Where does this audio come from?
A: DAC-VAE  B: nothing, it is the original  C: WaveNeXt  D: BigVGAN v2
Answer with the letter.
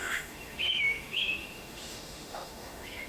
A